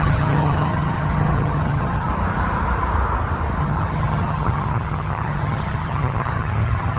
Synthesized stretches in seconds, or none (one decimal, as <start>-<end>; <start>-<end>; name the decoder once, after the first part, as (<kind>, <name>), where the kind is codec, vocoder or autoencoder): 0.0-2.1 (vocoder, HiFi-GAN); 3.6-7.0